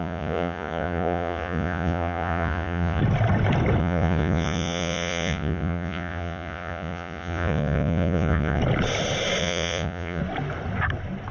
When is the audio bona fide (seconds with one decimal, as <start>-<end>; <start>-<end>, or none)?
3.0-3.8; 8.6-9.4; 10.2-11.3